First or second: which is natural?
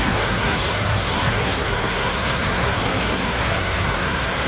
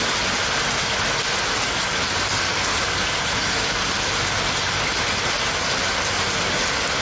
second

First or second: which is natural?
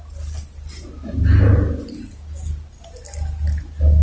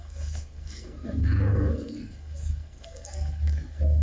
first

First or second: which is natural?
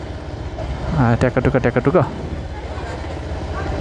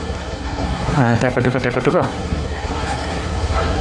first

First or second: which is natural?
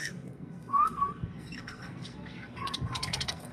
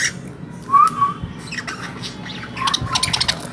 second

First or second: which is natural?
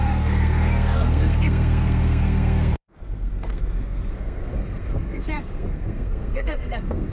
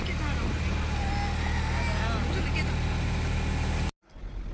second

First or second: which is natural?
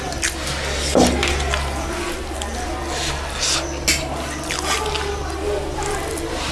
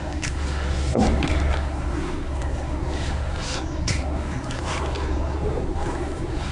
first